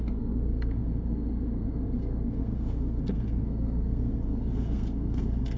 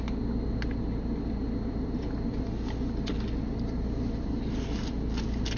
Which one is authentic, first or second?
second